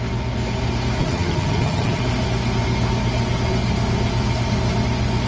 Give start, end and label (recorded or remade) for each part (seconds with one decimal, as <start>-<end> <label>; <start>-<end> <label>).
0.0-1.0 recorded; 1.0-2.0 remade; 2.0-5.3 recorded